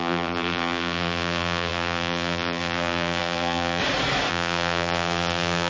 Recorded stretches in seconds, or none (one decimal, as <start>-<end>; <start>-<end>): 3.8-4.3